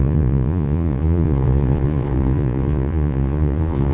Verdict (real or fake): fake